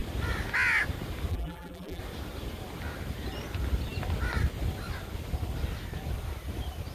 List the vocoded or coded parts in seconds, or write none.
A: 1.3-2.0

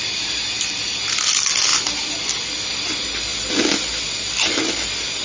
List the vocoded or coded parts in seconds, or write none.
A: none

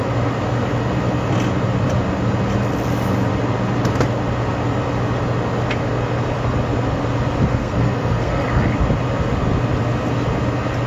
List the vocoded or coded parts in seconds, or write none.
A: 7.6-8.4

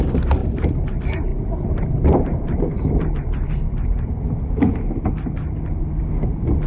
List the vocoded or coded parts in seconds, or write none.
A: 0.4-0.9; 1.3-2.9